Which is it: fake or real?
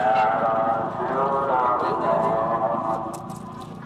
real